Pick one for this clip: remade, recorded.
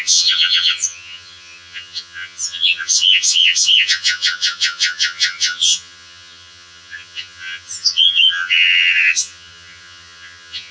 remade